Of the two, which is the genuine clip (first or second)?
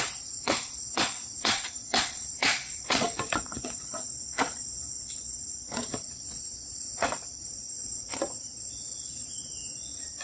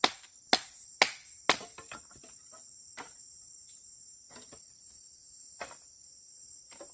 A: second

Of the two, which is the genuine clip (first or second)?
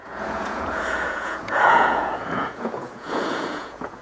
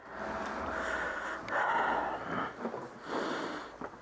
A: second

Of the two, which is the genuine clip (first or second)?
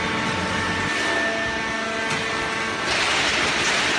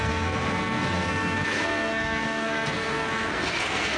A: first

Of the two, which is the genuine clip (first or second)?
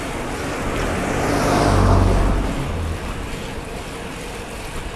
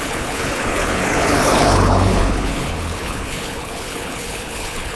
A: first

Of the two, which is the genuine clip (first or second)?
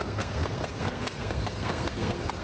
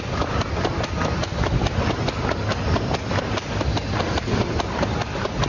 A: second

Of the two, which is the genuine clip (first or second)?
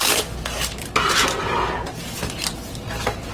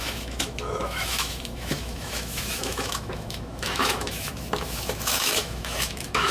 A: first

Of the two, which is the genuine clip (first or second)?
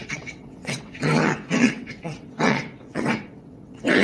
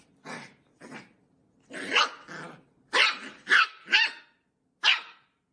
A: second